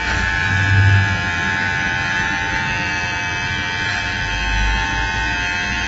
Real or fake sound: real